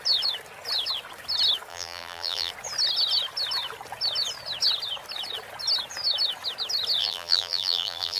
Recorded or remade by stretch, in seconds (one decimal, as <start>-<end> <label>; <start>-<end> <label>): 0.0-1.7 recorded; 1.7-2.5 remade; 2.5-7.0 recorded; 7.0-8.2 remade